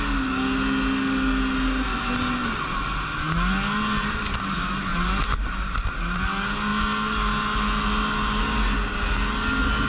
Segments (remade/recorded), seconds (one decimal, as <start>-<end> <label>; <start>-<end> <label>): 0.0-4.9 recorded; 4.9-6.2 remade; 6.2-9.9 recorded